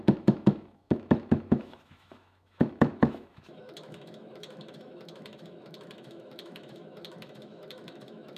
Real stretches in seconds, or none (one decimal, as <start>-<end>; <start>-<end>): none